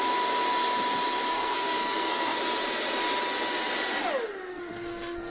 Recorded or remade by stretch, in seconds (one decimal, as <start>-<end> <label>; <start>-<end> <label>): 0.0-1.3 recorded; 1.3-2.4 remade; 2.4-4.5 recorded; 4.5-5.3 remade